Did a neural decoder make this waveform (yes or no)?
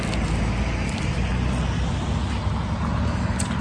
no